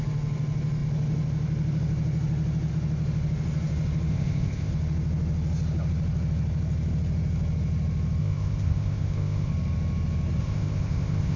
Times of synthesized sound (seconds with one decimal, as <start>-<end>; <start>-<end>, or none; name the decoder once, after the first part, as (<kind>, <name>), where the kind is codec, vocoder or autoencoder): 4.1-4.7 (codec, ZipCodec); 8.2-9.5; 10.4-11.4